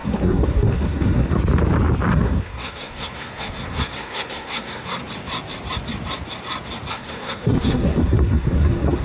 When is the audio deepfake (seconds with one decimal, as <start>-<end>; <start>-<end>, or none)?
0.0-1.4; 2.1-5.0; 6.9-9.0